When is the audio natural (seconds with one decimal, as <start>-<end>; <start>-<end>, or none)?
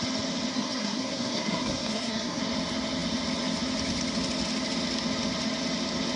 0.0-0.5; 2.4-6.2